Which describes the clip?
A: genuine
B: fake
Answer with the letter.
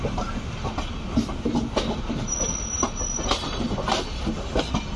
A